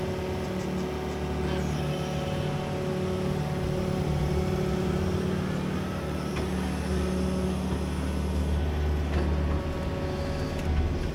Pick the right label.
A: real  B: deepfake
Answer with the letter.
A